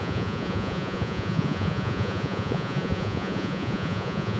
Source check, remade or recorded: remade